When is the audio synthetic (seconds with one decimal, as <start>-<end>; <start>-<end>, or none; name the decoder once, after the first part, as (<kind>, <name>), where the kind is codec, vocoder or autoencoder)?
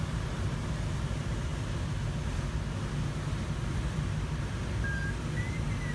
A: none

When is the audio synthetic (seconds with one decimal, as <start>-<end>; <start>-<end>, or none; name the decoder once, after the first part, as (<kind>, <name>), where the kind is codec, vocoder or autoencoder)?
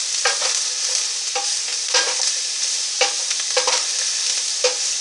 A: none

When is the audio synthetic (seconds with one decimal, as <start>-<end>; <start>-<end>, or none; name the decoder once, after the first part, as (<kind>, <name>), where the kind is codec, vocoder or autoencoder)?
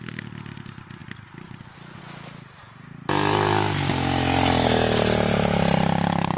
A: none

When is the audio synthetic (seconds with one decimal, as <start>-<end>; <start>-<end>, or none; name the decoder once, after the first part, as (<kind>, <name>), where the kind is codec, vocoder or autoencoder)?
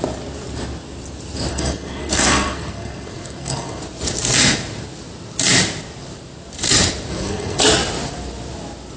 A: 1.5-3.8 (codec, SNAC); 7.1-7.6